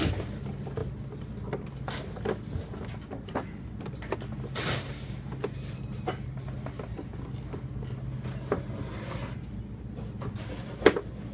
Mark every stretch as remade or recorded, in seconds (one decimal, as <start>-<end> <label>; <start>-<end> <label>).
0.0-11.3 recorded